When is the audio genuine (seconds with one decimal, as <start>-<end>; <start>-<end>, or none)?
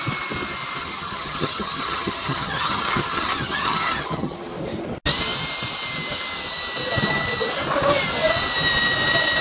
0.0-0.8; 4.4-9.4